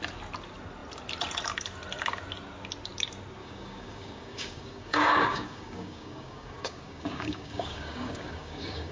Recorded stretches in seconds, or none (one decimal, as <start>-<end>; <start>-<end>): 0.0-3.4